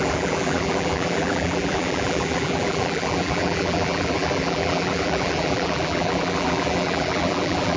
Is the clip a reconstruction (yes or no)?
yes